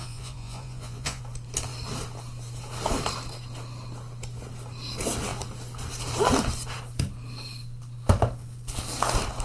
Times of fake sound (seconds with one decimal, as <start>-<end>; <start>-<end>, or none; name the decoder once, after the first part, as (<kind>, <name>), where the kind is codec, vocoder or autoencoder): 0.0-1.2 (vocoder, Vocos)